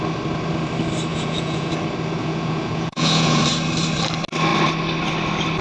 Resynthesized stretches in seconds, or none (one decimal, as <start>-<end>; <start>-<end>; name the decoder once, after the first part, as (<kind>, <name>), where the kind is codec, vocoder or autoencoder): 1.1-1.7 (vocoder, Vocos); 2.2-3.4